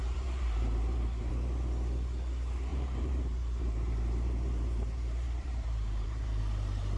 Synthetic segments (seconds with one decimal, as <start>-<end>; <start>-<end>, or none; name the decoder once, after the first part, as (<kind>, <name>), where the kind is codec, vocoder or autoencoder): 0.0-1.3 (vocoder, BigVGAN v2); 2.7-6.4